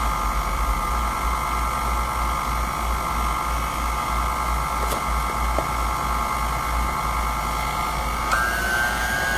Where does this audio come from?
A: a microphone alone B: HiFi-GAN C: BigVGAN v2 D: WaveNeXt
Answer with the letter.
A